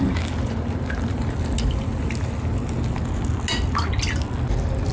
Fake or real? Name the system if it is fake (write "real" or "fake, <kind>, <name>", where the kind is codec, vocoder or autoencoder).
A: real